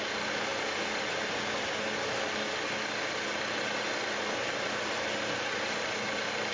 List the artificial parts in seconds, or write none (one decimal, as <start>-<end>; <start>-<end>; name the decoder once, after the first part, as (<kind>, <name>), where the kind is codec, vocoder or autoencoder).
none